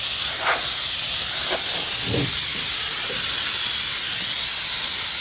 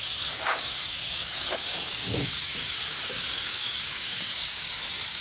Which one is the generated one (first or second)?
second